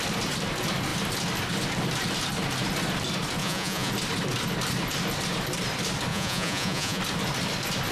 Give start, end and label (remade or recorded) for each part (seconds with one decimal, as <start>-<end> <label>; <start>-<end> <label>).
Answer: 0.0-3.4 recorded; 3.4-3.9 remade; 3.9-6.1 recorded; 6.1-7.0 remade; 7.0-7.9 recorded